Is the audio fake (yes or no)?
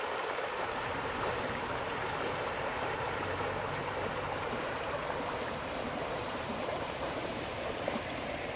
yes